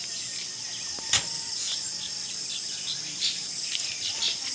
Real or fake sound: real